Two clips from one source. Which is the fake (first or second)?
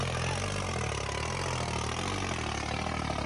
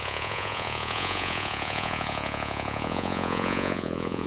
second